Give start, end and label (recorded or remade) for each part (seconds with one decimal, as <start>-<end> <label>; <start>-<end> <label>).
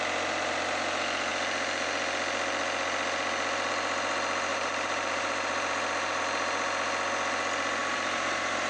0.0-4.5 recorded; 4.5-6.2 remade; 6.2-7.8 recorded; 7.8-8.7 remade